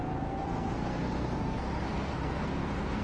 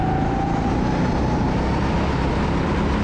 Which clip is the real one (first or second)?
second